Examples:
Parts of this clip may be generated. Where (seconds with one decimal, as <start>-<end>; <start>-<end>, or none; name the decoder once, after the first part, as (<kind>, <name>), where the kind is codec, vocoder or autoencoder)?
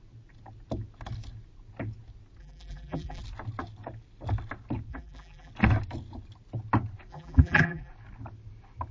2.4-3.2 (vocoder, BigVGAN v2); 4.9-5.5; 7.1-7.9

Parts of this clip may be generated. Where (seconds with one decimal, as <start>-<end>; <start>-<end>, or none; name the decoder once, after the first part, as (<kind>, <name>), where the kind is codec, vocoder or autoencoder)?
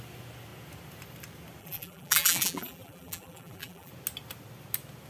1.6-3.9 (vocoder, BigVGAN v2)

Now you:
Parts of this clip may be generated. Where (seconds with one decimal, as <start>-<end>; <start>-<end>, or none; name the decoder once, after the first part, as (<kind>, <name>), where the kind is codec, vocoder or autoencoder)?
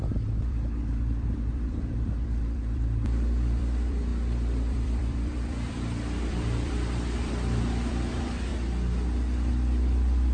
0.0-8.5 (vocoder, BigVGAN v2); 9.5-10.3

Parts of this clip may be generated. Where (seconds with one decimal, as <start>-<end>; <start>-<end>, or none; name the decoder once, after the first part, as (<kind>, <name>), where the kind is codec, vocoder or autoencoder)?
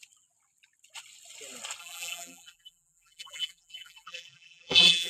1.8-5.1 (vocoder, BigVGAN v2)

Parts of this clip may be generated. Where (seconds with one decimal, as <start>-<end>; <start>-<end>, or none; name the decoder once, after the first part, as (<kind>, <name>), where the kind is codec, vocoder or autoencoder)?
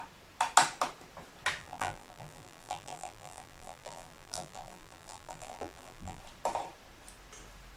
1.6-6.2 (vocoder, BigVGAN v2)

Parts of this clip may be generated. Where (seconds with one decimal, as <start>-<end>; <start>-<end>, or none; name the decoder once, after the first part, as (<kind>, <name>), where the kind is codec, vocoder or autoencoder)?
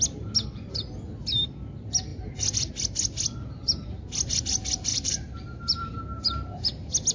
4.9-6.0 (vocoder, BigVGAN v2)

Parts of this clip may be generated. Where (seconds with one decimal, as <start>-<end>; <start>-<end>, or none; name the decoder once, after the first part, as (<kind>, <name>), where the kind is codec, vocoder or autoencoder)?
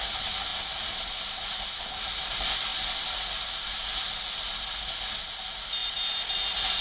0.5-1.1 (vocoder, BigVGAN v2); 2.7-3.3